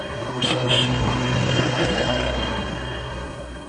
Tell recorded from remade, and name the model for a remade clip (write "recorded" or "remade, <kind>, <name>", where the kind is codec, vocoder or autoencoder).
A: remade, codec, SNAC